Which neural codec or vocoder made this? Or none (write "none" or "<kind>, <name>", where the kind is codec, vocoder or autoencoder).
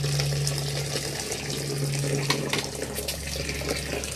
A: none